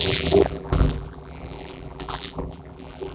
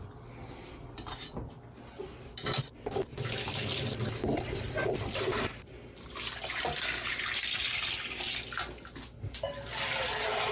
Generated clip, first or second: first